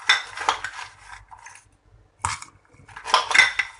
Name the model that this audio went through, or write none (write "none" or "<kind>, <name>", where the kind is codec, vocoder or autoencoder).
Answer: none